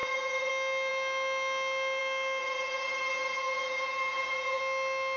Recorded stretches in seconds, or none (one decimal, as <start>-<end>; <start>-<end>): 0.5-2.4; 4.6-5.2